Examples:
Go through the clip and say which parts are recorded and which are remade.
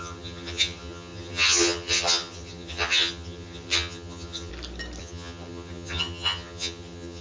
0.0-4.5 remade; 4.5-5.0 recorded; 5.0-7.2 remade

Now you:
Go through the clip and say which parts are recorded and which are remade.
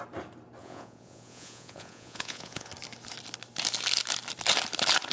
0.0-0.6 recorded; 0.6-2.7 remade; 2.7-5.1 recorded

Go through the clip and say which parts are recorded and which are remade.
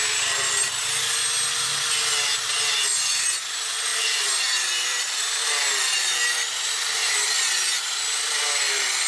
0.0-3.9 recorded; 3.9-5.5 remade; 5.5-6.0 recorded; 6.0-9.1 remade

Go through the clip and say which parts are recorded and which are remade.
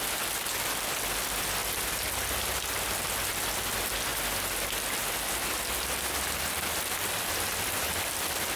0.0-8.6 recorded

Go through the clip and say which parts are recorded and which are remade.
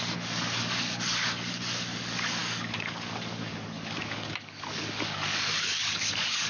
0.0-6.5 remade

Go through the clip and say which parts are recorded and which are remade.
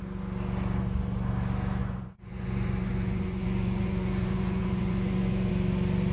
0.0-1.8 recorded; 1.8-5.5 remade; 5.5-6.1 recorded